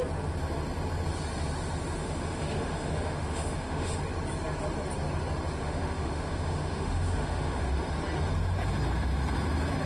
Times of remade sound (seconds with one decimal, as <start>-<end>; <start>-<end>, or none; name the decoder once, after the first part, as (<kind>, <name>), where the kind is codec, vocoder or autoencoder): 2.0-4.0 (autoencoder, DAC-VAE); 5.6-7.7